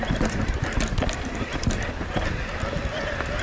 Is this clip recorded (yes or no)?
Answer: yes